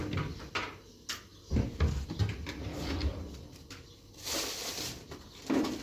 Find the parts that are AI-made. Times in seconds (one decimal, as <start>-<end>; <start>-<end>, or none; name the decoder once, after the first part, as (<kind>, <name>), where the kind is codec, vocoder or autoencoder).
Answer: none